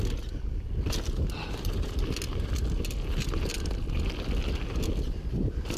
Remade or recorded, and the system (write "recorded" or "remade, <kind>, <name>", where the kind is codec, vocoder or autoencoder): recorded